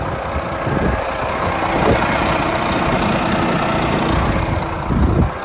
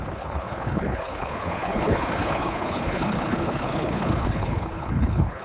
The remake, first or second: second